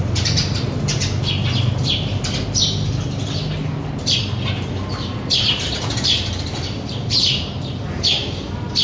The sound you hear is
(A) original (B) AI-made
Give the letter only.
B